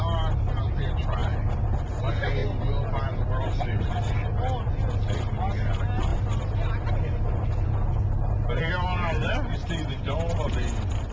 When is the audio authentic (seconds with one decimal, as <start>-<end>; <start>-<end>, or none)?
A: 0.0-2.4; 3.9-11.1